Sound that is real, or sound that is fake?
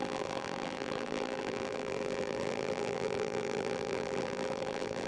fake